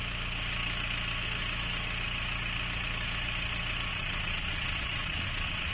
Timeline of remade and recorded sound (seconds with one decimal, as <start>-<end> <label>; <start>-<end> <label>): 0.0-3.9 recorded; 3.9-5.7 remade